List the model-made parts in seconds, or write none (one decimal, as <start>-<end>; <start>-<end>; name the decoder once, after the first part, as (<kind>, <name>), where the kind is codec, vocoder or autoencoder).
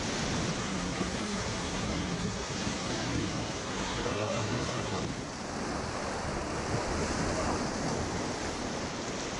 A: 0.6-5.0 (codec, SNAC)